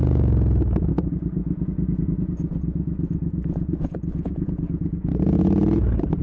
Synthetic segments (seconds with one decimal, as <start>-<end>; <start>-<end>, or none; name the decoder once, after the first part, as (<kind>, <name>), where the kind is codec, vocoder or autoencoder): 1.4-5.1 (vocoder, Vocos)